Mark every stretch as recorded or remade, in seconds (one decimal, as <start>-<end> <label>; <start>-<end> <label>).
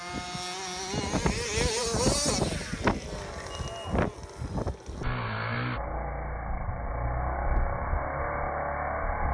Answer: 0.0-9.3 recorded